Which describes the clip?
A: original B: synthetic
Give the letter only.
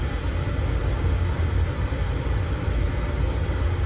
A